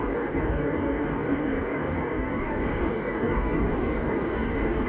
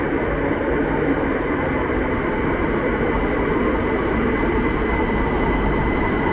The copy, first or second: first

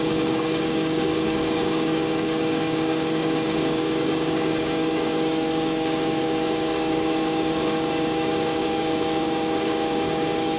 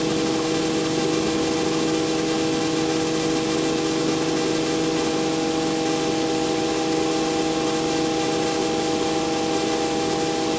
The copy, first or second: first